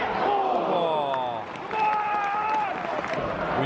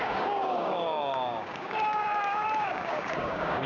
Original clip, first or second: first